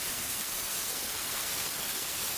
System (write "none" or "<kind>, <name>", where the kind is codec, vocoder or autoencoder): codec, SNAC